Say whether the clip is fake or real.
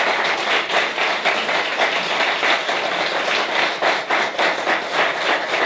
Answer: real